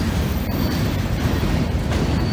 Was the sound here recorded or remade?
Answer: remade